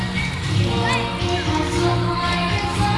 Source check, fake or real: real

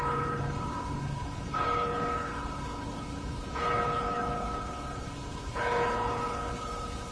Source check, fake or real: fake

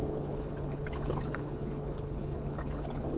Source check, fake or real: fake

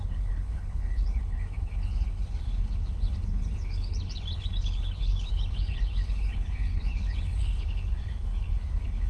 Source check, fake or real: fake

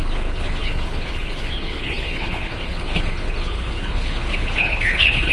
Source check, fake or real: fake